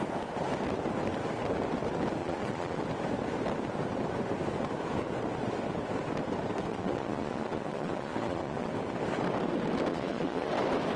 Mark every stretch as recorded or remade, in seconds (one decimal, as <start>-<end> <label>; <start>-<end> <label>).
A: 0.0-2.2 recorded; 2.2-2.8 remade; 2.8-6.7 recorded; 6.7-8.7 remade; 8.7-9.9 recorded; 9.9-10.5 remade; 10.5-11.0 recorded